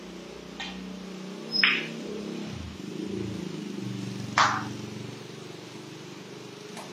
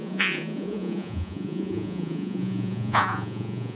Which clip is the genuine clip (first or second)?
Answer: first